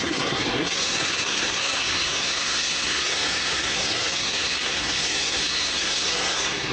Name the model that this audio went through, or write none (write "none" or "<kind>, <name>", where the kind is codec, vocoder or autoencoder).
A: codec, SNAC